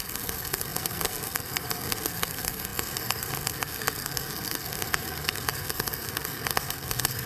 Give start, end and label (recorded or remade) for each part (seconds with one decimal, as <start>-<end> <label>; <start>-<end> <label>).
0.0-7.3 remade